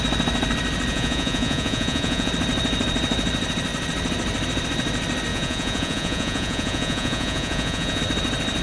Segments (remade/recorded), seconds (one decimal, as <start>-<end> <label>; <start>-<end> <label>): 0.0-0.9 recorded; 0.9-2.3 remade; 2.3-5.3 recorded; 5.3-8.0 remade; 8.0-8.6 recorded